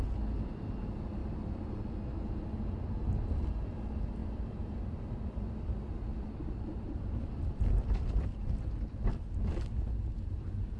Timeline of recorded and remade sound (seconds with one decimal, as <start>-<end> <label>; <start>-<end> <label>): 0.0-1.2 recorded; 1.2-1.9 remade; 1.9-4.2 recorded; 4.2-4.8 remade; 4.8-6.1 recorded; 6.1-8.5 remade; 8.5-10.8 recorded